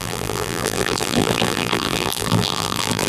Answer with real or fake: fake